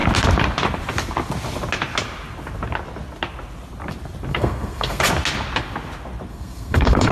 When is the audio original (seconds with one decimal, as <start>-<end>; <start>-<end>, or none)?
0.0-4.3; 5.0-6.3